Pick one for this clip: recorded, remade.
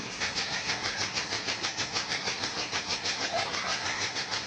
remade